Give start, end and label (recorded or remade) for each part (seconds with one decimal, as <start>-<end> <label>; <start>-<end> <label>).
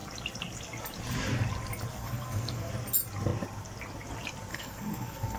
0.0-1.9 recorded; 1.9-2.7 remade; 2.7-4.5 recorded; 4.5-5.4 remade